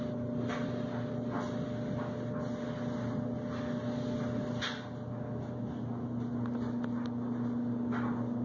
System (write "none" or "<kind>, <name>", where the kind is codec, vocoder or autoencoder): none